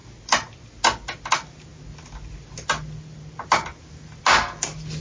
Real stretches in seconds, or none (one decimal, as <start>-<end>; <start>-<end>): 0.0-5.0